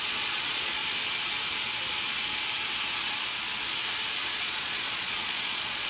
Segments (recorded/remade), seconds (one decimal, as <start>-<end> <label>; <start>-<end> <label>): 0.0-0.8 remade; 0.8-4.3 recorded; 4.3-5.9 remade

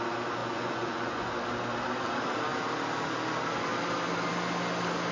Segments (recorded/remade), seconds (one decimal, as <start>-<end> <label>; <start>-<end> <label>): 0.0-0.4 recorded; 0.4-1.3 remade; 1.3-5.1 recorded

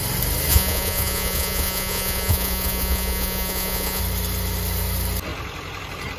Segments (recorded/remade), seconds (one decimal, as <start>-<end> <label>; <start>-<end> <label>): 0.0-0.5 recorded; 0.5-4.0 remade; 4.0-6.2 recorded

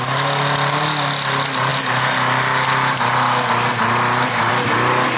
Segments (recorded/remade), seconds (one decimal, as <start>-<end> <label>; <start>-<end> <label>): 0.0-5.2 recorded

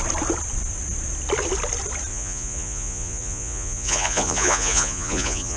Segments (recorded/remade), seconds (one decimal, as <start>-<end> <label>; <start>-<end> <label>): 0.0-2.1 recorded; 2.1-5.6 remade

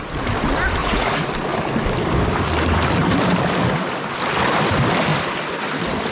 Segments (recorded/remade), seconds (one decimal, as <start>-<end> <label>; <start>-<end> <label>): 0.0-0.8 recorded; 0.8-1.3 remade; 1.3-6.1 recorded

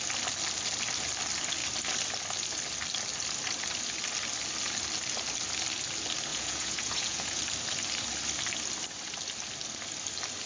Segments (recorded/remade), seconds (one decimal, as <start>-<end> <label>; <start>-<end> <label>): 0.0-6.3 recorded; 6.3-7.4 remade; 7.4-10.5 recorded

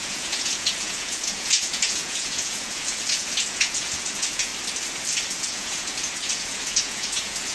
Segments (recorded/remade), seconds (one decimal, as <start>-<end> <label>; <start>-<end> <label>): 0.0-4.5 remade; 4.5-5.4 recorded; 5.4-7.5 remade